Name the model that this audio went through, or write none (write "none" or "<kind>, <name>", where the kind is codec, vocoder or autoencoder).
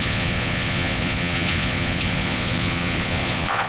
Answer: vocoder, Vocos